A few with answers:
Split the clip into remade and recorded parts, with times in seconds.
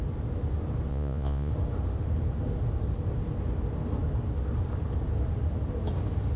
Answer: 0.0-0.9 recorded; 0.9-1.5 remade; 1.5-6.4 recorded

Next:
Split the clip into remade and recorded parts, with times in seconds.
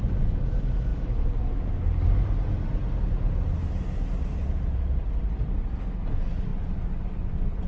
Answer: 0.0-7.7 recorded